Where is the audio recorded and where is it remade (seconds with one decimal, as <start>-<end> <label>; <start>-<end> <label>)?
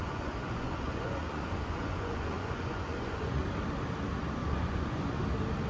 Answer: 0.0-3.4 remade; 3.4-4.4 recorded; 4.4-5.2 remade; 5.2-5.7 recorded